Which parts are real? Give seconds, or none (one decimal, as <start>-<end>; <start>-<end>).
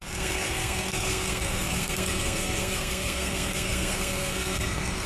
none